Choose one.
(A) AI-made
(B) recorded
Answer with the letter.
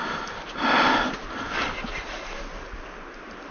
B